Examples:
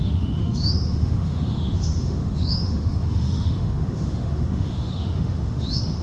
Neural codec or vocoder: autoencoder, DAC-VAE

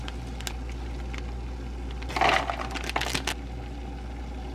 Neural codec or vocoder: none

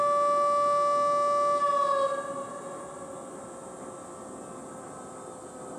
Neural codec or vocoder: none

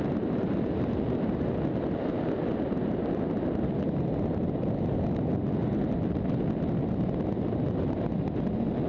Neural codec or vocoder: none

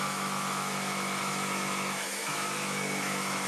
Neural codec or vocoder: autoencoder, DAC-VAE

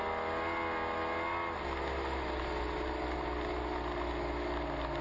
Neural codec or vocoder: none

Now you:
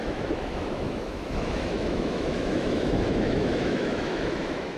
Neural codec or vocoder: autoencoder, DAC-VAE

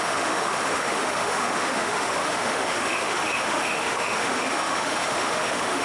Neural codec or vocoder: autoencoder, DAC-VAE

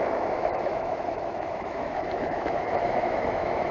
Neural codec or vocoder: autoencoder, DAC-VAE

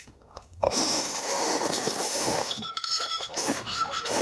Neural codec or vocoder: autoencoder, DAC-VAE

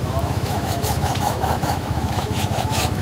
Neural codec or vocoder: autoencoder, DAC-VAE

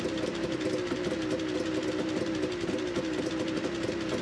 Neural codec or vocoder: none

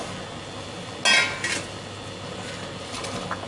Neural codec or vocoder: none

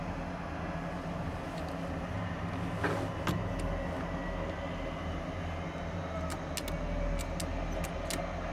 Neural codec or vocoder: none